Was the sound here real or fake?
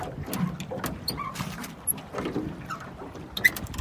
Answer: real